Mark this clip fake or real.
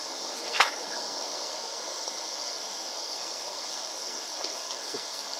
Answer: fake